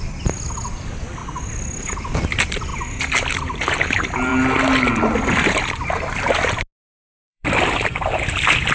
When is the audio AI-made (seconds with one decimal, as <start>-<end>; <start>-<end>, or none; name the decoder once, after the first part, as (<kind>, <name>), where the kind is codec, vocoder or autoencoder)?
0.0-1.2 (vocoder, BigVGAN v2); 1.8-2.7; 3.4-4.3; 7.1-8.7